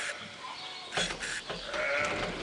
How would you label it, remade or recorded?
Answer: recorded